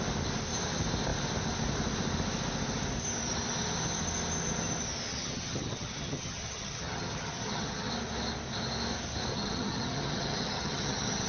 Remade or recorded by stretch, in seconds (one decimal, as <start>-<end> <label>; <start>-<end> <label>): 0.0-5.1 recorded; 5.1-7.9 remade; 7.9-9.3 recorded; 9.3-11.3 remade